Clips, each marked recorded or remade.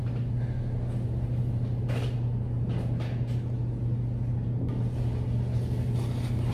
recorded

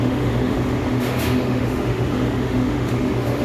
remade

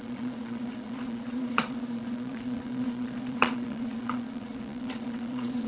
remade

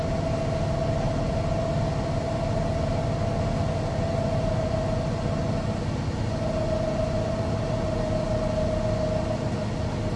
recorded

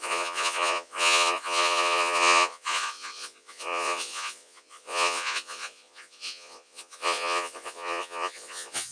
remade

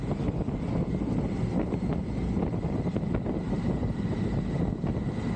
recorded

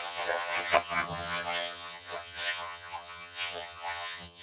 remade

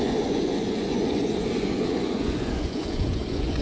remade